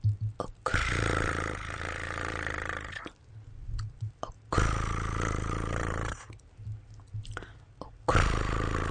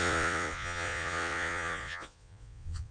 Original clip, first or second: first